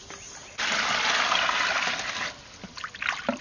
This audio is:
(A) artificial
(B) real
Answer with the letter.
B